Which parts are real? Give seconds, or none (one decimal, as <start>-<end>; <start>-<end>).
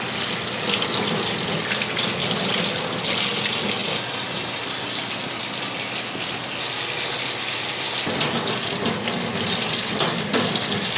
0.0-11.0